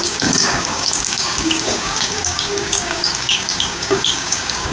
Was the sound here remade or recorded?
remade